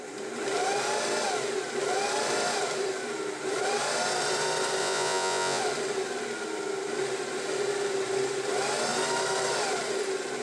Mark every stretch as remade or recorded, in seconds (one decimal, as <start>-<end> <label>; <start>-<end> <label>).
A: 0.0-4.8 recorded; 4.8-5.6 remade; 5.6-10.4 recorded

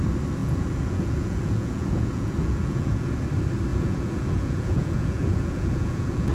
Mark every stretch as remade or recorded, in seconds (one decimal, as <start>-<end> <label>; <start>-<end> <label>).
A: 0.0-0.4 recorded; 0.4-3.1 remade; 3.1-3.7 recorded; 3.7-6.3 remade

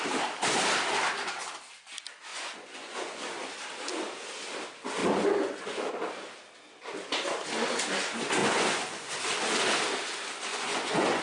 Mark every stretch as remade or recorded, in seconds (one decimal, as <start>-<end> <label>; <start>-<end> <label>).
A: 0.0-2.3 recorded; 2.3-3.2 remade; 3.2-8.4 recorded; 8.4-9.1 remade; 9.1-10.5 recorded; 10.5-11.2 remade